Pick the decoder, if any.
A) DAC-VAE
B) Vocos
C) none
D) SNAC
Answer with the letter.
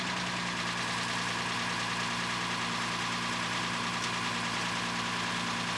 C